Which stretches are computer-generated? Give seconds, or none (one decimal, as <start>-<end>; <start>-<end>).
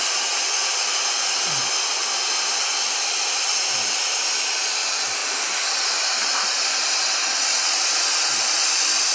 2.7-4.2; 5.2-7.1